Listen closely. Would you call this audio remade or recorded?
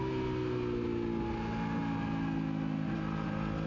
recorded